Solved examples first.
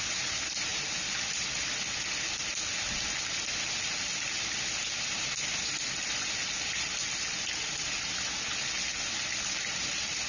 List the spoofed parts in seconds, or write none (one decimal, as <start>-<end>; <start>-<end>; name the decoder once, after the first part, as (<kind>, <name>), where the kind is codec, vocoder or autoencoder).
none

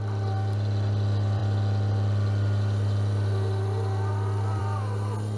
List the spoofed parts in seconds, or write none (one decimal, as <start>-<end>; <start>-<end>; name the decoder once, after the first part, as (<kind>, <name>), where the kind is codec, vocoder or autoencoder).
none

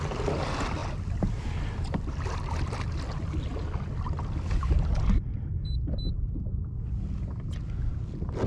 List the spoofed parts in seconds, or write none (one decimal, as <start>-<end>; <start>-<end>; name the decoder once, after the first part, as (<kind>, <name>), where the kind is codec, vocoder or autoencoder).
none

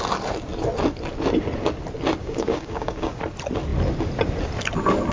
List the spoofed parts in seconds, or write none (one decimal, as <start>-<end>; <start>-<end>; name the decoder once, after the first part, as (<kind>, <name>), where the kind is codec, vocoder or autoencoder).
2.2-3.2 (codec, DAC)

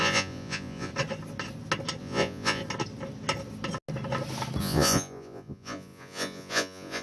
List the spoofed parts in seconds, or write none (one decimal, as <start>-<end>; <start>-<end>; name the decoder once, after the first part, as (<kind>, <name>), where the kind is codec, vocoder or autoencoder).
0.0-0.9 (vocoder, Vocos); 2.0-2.6; 4.6-7.0